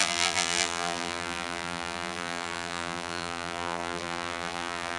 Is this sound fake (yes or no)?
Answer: yes